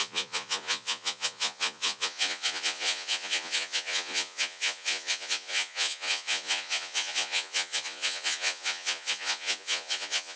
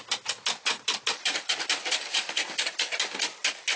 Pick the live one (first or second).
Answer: second